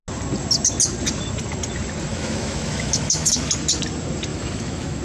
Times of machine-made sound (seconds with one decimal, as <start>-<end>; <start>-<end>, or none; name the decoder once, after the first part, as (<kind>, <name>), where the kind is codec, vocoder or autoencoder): 2.1-3.5 (autoencoder, DAC-VAE); 4.3-5.0

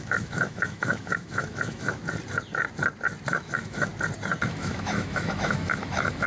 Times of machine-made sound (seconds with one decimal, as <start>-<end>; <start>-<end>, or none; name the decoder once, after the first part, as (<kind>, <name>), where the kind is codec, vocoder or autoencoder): 0.0-2.0 (autoencoder, DAC-VAE); 3.3-3.9; 4.5-6.3

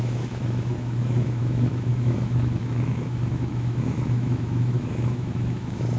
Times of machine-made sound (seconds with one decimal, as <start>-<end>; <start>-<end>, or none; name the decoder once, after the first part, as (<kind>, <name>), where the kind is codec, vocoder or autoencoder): 0.0-6.0 (autoencoder, DAC-VAE)

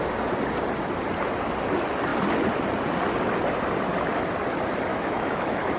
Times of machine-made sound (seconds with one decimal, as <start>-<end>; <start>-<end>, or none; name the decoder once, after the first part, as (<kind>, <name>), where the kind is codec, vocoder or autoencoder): 4.9-5.8 (autoencoder, DAC-VAE)

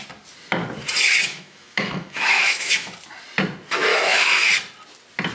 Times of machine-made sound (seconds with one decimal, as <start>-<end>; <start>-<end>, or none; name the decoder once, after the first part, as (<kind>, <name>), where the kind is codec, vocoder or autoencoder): 1.2-2.9 (autoencoder, DAC-VAE); 3.9-4.5